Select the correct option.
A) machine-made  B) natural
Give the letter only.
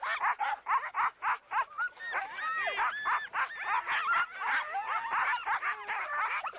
B